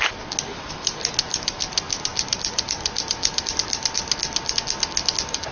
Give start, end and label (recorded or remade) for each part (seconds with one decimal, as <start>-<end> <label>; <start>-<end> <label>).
0.0-0.5 recorded; 0.5-1.1 remade; 1.1-2.1 recorded; 2.1-4.5 remade; 4.5-5.5 recorded